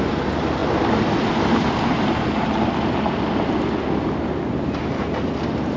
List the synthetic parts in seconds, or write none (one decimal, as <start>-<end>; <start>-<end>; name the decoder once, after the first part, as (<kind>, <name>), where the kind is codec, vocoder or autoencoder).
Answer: none